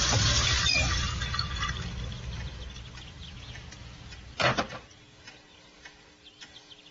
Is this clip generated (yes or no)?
no